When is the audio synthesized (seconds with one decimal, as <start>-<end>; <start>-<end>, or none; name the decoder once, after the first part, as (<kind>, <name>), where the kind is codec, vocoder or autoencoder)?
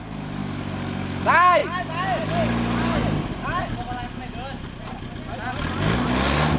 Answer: 0.4-1.2 (codec, DAC)